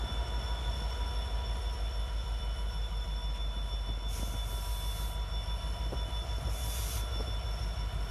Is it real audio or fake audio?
real